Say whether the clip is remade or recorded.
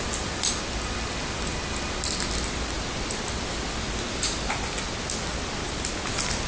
recorded